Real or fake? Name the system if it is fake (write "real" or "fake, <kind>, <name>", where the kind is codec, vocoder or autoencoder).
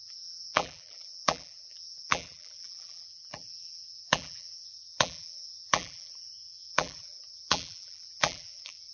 fake, vocoder, BigVGAN v2